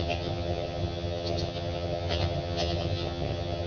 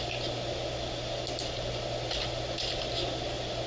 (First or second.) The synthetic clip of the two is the first